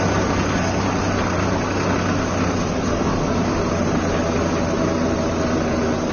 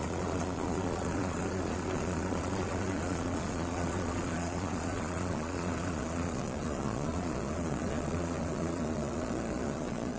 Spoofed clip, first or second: second